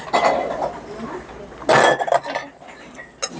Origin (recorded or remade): recorded